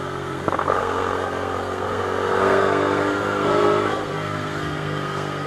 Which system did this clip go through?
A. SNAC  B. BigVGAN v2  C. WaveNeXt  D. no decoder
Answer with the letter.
A